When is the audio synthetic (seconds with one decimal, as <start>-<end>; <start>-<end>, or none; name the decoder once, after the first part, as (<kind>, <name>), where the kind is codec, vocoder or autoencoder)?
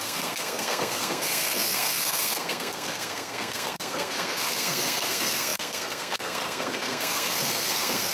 0.0-8.1 (codec, SNAC)